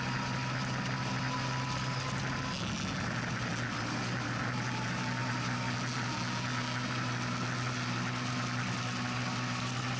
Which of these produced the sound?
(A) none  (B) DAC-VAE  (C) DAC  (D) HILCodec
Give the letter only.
A